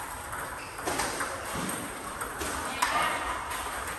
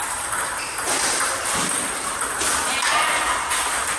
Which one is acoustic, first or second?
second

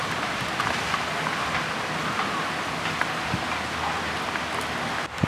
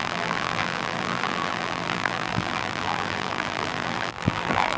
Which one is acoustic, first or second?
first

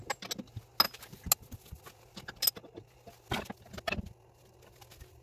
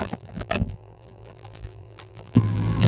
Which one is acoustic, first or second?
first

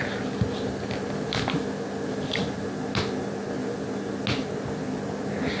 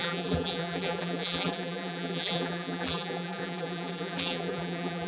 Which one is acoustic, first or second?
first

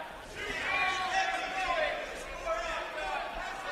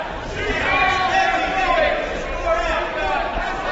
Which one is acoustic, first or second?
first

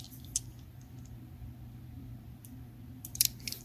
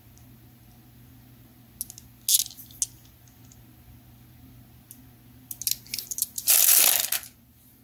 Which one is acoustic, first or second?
second